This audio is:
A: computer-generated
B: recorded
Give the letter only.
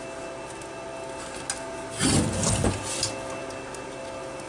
B